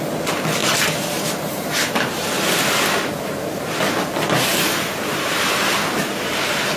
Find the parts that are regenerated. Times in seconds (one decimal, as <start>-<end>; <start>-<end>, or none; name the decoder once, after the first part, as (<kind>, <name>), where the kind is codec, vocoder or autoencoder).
0.6-2.8 (vocoder, BigVGAN v2); 4.5-5.6